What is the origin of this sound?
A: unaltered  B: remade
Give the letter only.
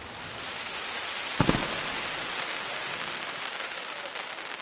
A